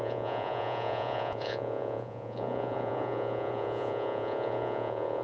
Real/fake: fake